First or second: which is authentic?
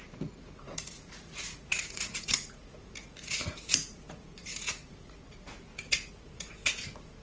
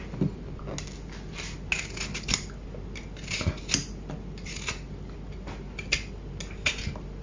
second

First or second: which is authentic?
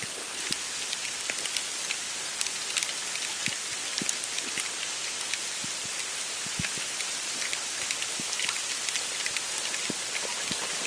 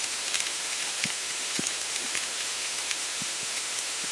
first